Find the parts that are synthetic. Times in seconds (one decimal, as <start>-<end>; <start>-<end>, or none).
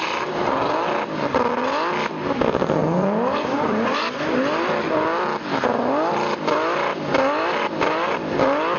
none